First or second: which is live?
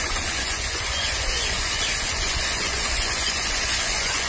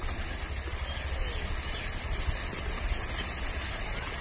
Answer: second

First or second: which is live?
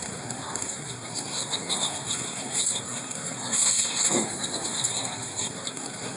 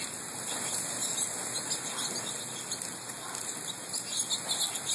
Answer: second